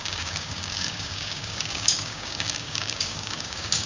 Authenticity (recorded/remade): remade